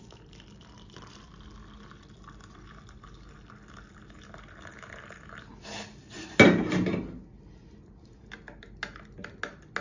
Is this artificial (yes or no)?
no